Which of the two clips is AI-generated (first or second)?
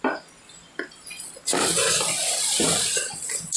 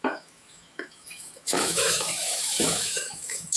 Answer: second